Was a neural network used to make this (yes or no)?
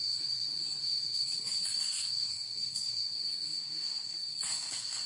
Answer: yes